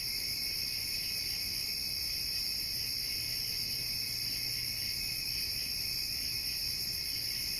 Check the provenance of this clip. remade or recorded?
recorded